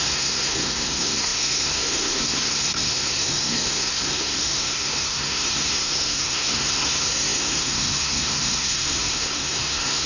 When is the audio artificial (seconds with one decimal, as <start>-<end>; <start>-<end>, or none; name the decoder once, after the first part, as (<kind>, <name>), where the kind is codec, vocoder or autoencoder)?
0.0-10.1 (codec, SNAC)